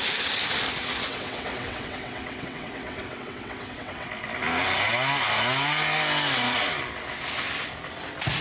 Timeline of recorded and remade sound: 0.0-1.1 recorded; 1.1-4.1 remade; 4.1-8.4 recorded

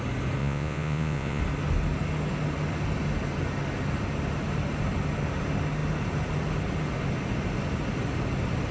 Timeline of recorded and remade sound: 0.0-0.4 recorded; 0.4-1.4 remade; 1.4-8.7 recorded

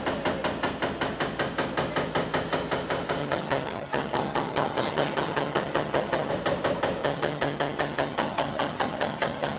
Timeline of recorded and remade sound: 0.0-3.2 recorded; 3.2-6.3 remade; 6.3-7.0 recorded; 7.0-9.6 remade

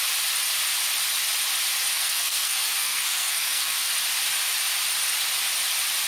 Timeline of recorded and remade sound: 0.0-1.9 recorded; 1.9-3.9 remade; 3.9-6.1 recorded

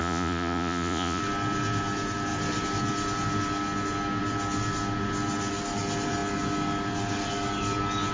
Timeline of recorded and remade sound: 0.0-1.2 remade; 1.2-8.1 recorded

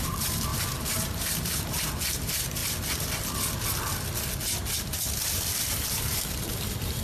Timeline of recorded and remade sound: 0.0-2.6 remade; 2.6-5.7 recorded; 5.7-7.0 remade